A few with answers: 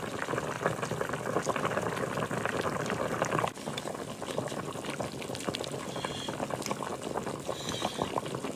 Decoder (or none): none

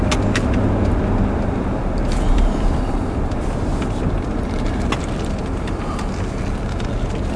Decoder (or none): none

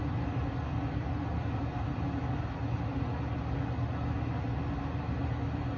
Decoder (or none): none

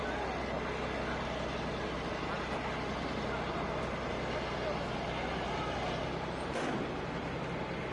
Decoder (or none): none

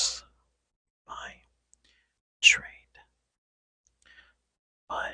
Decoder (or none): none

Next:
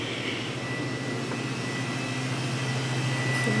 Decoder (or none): none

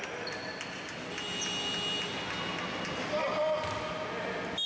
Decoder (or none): none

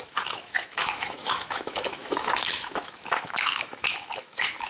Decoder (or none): autoencoder, DAC-VAE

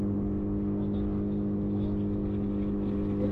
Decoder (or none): none